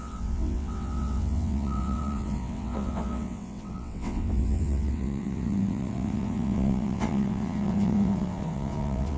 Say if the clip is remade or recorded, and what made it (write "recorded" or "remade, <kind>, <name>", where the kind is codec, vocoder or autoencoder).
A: remade, vocoder, WaveNeXt